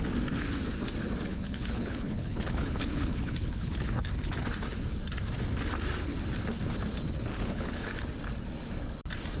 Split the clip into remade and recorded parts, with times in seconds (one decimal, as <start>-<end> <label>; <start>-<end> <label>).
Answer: 0.0-1.3 recorded; 1.3-4.1 remade; 4.1-7.3 recorded; 7.3-7.9 remade; 7.9-9.4 recorded